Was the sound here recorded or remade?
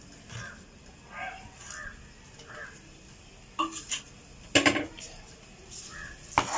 recorded